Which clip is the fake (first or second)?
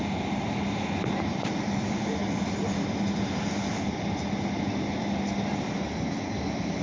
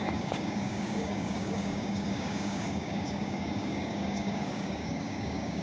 second